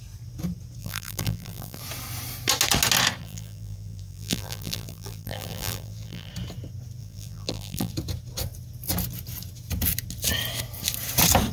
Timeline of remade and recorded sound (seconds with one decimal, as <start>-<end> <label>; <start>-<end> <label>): 0.0-0.8 recorded; 0.8-1.8 remade; 1.8-3.2 recorded; 3.2-6.3 remade; 6.3-7.0 recorded; 7.0-7.9 remade; 7.9-11.5 recorded

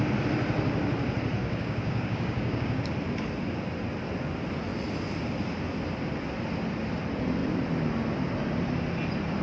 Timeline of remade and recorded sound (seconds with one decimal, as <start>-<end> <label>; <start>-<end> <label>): 0.0-1.4 recorded; 1.4-2.8 remade; 2.8-9.4 recorded

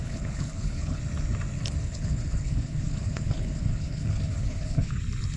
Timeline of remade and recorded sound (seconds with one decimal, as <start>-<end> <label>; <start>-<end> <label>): 0.0-1.0 remade; 1.0-1.8 recorded; 1.8-5.0 remade; 5.0-5.4 recorded

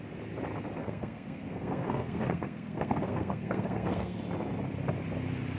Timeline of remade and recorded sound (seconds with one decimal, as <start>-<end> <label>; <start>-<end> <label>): 0.0-0.8 recorded; 0.8-4.2 remade; 4.2-5.6 recorded

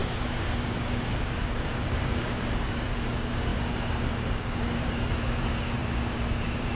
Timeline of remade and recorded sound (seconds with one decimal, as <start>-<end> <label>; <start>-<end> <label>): 0.0-6.7 remade

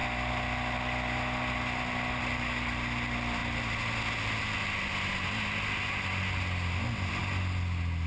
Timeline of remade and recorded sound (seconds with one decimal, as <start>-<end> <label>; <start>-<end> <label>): 0.0-8.1 recorded

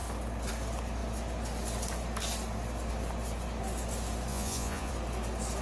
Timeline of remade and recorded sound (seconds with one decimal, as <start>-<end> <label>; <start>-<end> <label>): 0.0-4.3 recorded; 4.3-4.9 remade; 4.9-5.6 recorded

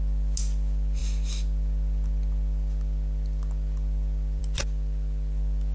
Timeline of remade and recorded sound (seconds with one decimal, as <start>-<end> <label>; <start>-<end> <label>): 0.0-5.7 recorded